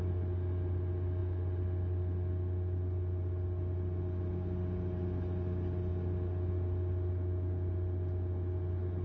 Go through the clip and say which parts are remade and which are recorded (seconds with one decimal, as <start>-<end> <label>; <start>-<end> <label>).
0.0-9.0 recorded